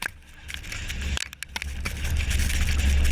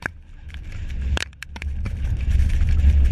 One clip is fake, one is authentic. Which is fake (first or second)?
second